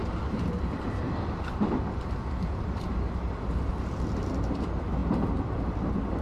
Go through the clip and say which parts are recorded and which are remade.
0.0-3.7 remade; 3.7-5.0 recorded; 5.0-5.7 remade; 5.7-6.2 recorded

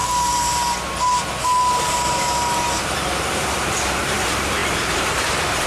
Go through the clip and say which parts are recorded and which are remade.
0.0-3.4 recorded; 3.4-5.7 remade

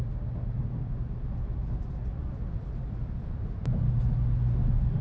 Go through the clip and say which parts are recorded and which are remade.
0.0-2.2 recorded; 2.2-2.8 remade; 2.8-5.0 recorded

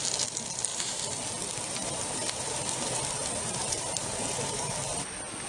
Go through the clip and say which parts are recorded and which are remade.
0.0-0.7 recorded; 0.7-1.2 remade; 1.2-1.8 recorded; 1.8-4.8 remade; 4.8-5.5 recorded